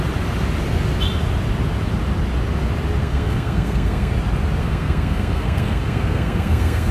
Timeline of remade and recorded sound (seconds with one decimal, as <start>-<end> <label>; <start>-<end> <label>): 0.0-3.0 recorded; 3.0-4.1 remade; 4.1-4.6 recorded; 4.6-6.9 remade